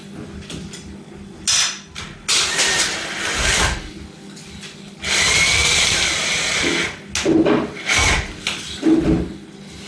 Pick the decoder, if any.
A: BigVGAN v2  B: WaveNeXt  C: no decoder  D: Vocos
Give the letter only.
C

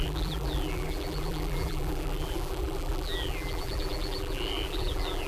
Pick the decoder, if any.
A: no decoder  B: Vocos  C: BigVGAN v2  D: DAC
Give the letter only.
C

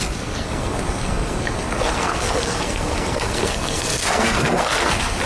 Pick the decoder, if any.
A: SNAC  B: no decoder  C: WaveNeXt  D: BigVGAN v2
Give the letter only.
A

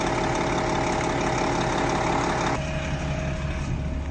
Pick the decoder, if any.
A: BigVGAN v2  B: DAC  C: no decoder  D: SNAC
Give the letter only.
C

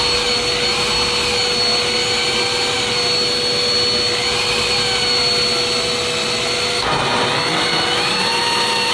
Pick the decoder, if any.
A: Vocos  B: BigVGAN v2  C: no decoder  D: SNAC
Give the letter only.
C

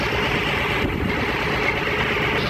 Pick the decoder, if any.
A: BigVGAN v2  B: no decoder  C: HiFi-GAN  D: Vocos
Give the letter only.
A